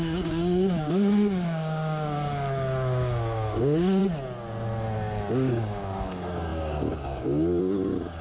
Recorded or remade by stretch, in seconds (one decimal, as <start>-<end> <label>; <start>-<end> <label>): 0.0-4.0 remade; 4.0-5.3 recorded; 5.3-8.2 remade